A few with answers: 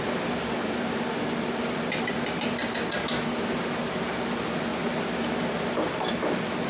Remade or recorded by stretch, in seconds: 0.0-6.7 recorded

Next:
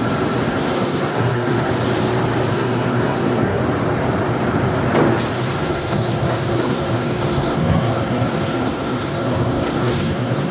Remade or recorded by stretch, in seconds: 0.0-0.5 recorded; 0.5-1.7 remade; 1.7-2.5 recorded; 2.5-3.6 remade; 3.6-5.4 recorded; 5.4-10.5 remade

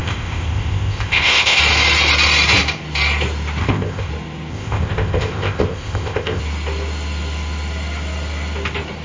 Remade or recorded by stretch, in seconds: 0.0-1.6 remade; 1.6-3.6 recorded; 3.6-4.1 remade; 4.1-4.5 recorded; 4.5-6.4 remade; 6.4-9.0 recorded

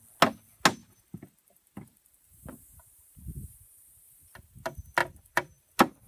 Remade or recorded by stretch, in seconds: 0.0-0.8 recorded; 0.8-4.5 remade; 4.5-5.0 recorded; 5.0-5.6 remade; 5.6-6.1 recorded